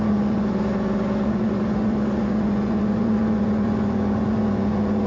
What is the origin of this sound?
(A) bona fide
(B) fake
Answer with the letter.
B